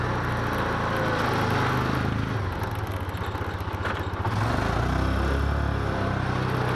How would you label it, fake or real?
real